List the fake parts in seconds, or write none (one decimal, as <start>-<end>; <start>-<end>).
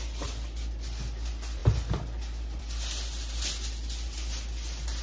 none